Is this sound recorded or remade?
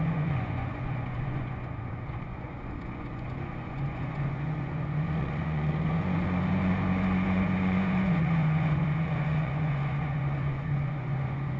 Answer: remade